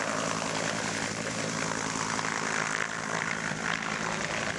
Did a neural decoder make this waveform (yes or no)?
yes